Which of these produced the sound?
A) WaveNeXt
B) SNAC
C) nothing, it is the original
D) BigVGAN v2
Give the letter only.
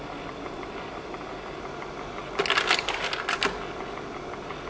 C